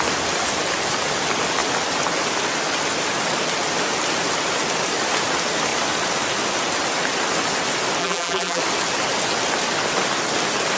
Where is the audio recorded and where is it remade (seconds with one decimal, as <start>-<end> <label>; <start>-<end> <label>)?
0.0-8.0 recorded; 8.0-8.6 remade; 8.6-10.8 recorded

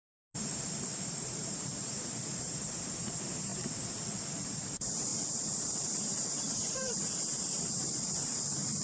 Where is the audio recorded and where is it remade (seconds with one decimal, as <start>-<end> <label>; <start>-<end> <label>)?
0.0-0.8 recorded; 0.8-3.5 remade; 3.5-4.3 recorded; 4.3-8.8 remade

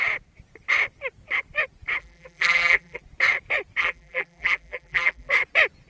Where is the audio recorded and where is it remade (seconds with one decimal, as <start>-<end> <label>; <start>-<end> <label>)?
0.0-2.0 recorded; 2.0-3.0 remade; 3.0-3.8 recorded; 3.8-5.3 remade; 5.3-5.9 recorded

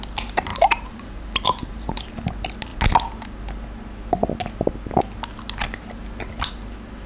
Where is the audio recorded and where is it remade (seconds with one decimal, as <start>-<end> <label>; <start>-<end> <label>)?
0.0-0.5 recorded; 0.5-2.3 remade; 2.3-7.1 recorded